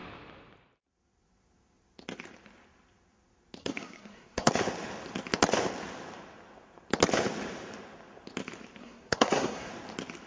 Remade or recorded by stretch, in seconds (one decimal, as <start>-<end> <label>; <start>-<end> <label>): 0.0-3.6 recorded; 3.6-4.5 remade; 4.5-8.8 recorded; 8.8-9.7 remade; 9.7-10.3 recorded